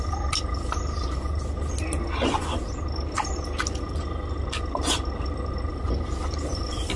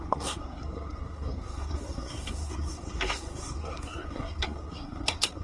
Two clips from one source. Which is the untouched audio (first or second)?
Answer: first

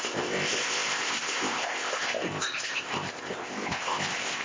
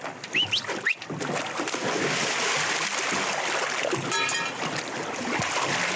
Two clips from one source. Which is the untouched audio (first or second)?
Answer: second